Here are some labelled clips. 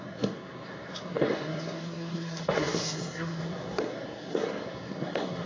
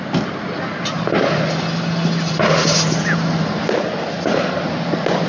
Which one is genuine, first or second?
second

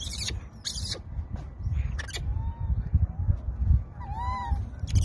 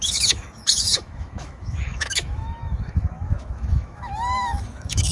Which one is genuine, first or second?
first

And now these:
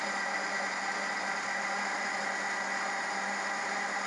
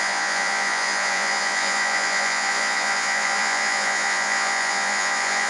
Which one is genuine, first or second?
first